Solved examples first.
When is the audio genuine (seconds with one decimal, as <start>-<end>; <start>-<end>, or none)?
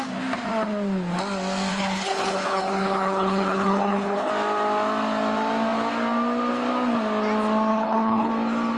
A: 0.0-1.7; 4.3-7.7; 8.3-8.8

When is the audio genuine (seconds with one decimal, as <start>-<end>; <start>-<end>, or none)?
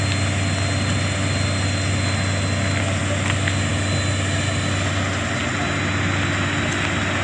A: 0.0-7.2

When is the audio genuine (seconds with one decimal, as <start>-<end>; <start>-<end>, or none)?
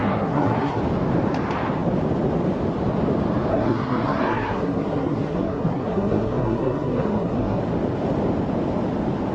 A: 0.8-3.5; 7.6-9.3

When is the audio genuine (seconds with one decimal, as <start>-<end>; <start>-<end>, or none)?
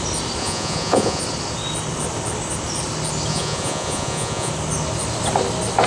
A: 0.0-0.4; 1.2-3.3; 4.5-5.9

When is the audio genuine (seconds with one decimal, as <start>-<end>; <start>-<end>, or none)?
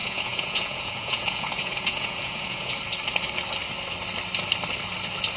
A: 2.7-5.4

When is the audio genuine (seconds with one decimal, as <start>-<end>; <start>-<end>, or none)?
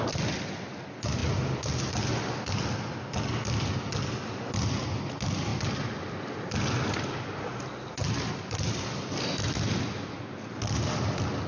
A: 0.0-11.5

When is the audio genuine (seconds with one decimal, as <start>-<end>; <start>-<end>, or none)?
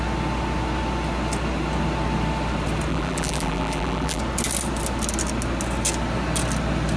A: 0.0-2.9; 4.2-7.0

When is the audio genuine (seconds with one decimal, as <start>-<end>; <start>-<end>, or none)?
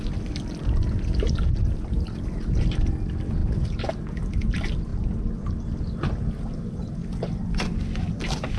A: 0.0-8.6